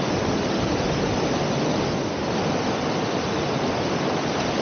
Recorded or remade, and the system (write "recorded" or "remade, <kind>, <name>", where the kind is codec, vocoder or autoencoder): recorded